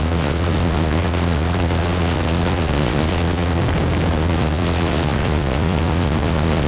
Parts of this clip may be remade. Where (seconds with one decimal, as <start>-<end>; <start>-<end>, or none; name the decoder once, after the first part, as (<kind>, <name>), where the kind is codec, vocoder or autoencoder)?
0.0-3.6 (vocoder, Vocos); 4.1-6.7